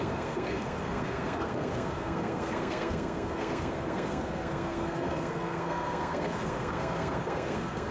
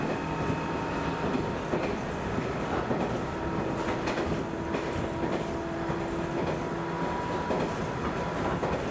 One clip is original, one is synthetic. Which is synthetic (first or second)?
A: first